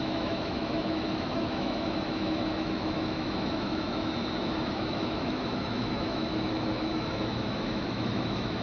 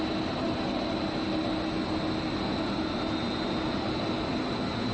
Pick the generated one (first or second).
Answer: first